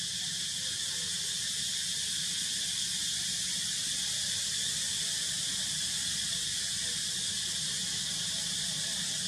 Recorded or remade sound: recorded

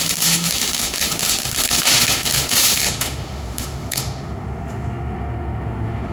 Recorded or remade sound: remade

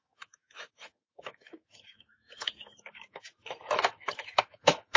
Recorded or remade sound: remade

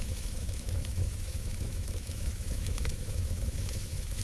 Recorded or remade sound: remade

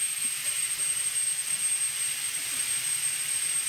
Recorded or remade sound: recorded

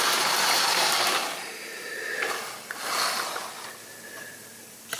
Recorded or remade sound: recorded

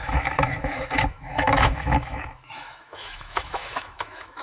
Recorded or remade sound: remade